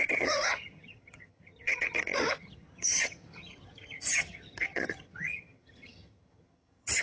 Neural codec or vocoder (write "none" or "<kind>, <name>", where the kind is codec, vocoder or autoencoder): vocoder, HiFi-GAN